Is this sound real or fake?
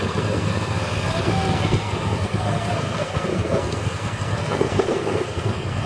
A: fake